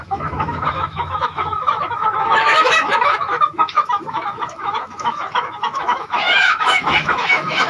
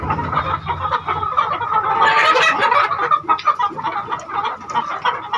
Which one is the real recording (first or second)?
second